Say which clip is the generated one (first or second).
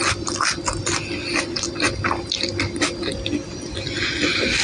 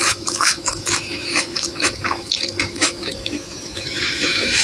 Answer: second